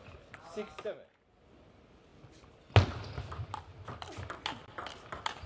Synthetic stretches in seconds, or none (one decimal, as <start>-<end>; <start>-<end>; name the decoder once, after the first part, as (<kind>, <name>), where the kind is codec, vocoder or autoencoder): none